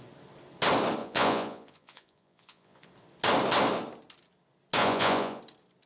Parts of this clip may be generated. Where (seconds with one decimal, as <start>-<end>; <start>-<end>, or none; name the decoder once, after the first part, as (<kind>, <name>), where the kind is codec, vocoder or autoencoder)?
1.0-2.9 (vocoder, Vocos); 4.8-5.4